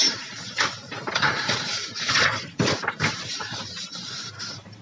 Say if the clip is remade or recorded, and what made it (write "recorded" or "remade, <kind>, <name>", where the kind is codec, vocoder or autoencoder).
remade, vocoder, BigVGAN v2